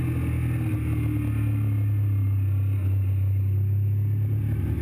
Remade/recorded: recorded